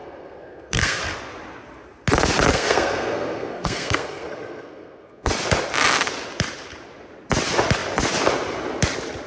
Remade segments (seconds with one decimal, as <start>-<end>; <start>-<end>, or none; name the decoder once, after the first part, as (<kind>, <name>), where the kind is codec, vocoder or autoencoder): 0.0-1.0 (codec, SNAC); 2.5-5.3